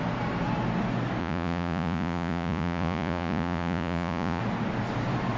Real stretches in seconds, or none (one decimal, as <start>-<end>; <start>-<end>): 0.0-1.2; 4.4-5.4